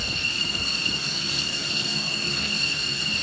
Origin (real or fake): fake